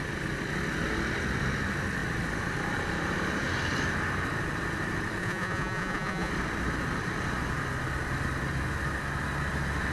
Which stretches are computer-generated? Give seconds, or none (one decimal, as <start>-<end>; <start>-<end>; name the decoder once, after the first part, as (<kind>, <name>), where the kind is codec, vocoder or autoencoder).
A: 5.2-6.3 (vocoder, Vocos)